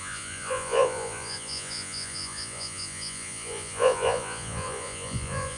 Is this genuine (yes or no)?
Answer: no